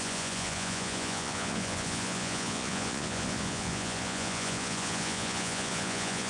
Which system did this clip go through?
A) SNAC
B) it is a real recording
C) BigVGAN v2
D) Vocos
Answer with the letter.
D